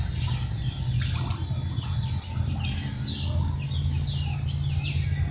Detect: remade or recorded recorded